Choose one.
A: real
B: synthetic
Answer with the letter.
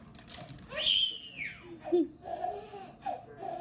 A